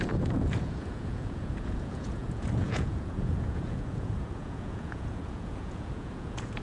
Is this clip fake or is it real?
fake